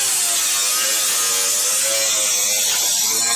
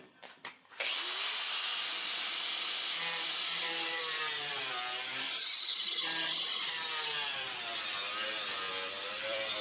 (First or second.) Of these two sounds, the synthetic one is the second